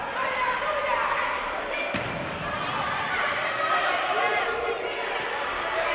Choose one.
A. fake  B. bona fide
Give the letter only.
B